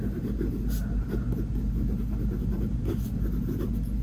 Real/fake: real